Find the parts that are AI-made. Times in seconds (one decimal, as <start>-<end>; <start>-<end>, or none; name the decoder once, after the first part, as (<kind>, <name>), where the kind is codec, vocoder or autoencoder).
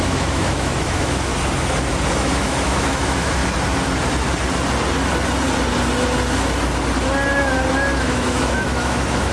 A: 0.0-1.3 (autoencoder, DAC-VAE); 2.1-3.4; 8.0-9.3